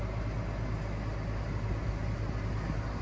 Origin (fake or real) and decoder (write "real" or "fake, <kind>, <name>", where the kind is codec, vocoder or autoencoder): real